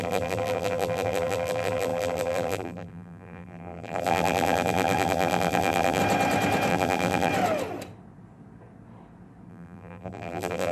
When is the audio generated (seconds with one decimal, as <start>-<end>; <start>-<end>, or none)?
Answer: 0.0-6.0; 6.7-7.3; 9.5-10.7